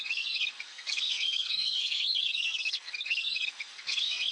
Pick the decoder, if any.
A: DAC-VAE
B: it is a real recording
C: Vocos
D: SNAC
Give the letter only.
D